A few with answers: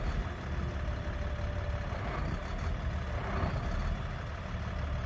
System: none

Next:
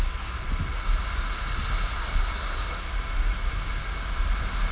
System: none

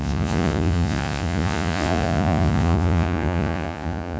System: vocoder, Vocos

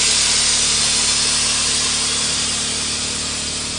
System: none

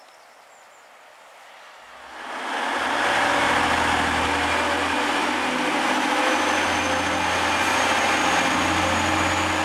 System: none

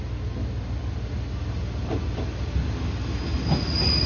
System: none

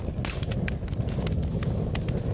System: none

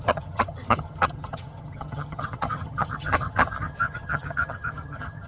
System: vocoder, HiFi-GAN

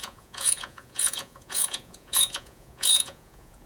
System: vocoder, Vocos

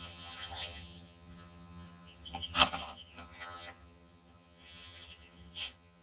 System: vocoder, HiFi-GAN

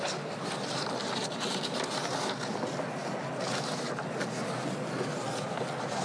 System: none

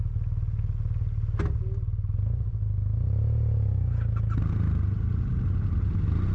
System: none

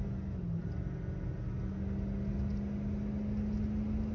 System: none